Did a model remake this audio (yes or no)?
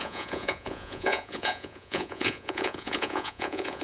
yes